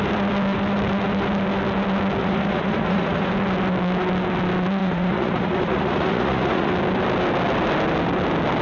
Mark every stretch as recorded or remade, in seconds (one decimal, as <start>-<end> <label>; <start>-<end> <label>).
0.0-2.2 recorded; 2.2-3.3 remade; 3.3-4.8 recorded; 4.8-6.7 remade; 6.7-8.6 recorded

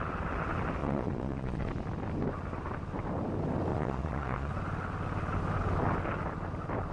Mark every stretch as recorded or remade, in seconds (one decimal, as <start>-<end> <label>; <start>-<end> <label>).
0.0-0.8 recorded; 0.8-1.7 remade; 1.7-3.7 recorded; 3.7-4.5 remade; 4.5-6.9 recorded

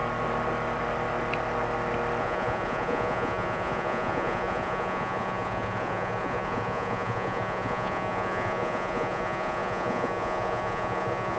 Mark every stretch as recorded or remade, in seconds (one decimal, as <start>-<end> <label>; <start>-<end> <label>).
0.0-2.2 recorded; 2.2-11.4 remade